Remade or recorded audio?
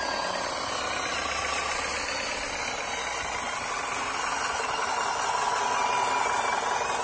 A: recorded